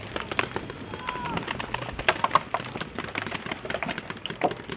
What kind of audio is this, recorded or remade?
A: recorded